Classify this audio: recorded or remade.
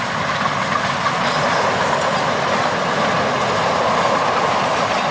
recorded